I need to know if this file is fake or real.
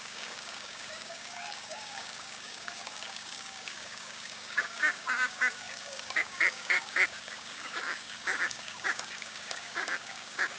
fake